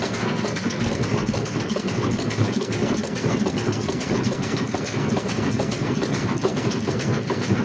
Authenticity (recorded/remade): remade